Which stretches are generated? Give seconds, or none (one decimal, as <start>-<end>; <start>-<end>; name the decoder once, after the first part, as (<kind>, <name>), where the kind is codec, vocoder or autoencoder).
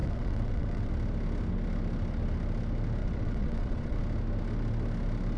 0.0-0.9 (vocoder, WaveNeXt); 3.0-4.0